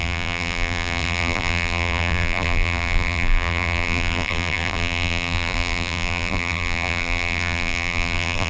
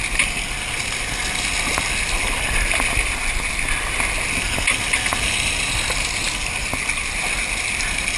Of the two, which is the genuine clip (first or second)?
second